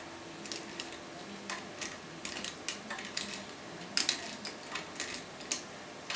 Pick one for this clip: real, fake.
real